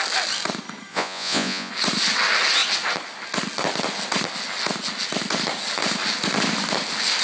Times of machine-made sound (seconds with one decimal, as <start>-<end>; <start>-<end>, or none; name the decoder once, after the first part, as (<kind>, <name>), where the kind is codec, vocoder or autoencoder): 0.9-1.7 (vocoder, Vocos)